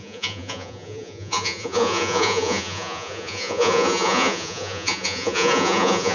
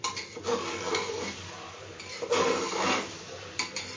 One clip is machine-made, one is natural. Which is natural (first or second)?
second